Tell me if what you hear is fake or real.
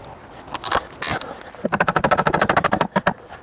real